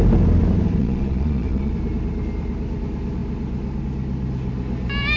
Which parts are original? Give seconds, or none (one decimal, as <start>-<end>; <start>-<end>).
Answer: 0.0-0.8; 1.7-5.2